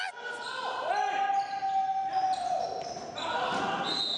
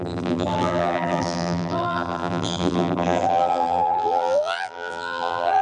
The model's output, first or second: second